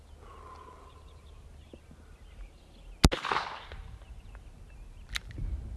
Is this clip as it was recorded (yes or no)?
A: yes